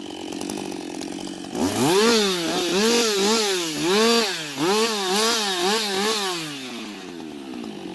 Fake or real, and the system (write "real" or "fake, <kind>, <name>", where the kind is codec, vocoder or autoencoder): real